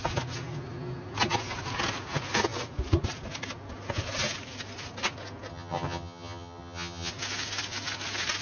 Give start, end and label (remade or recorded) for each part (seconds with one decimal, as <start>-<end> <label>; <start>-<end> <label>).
0.0-5.5 recorded; 5.5-7.1 remade; 7.1-8.4 recorded